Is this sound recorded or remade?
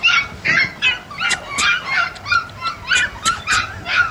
recorded